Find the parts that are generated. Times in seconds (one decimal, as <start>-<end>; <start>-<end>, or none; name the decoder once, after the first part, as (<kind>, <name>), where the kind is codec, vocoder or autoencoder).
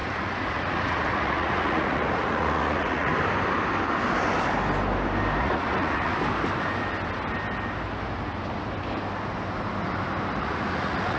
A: 0.0-3.1 (vocoder, Vocos); 5.4-6.1; 10.4-11.2